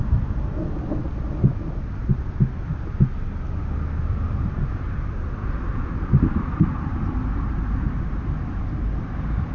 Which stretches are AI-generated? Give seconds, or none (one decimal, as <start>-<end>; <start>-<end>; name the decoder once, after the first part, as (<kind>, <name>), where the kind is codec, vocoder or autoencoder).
5.4-6.9 (vocoder, BigVGAN v2)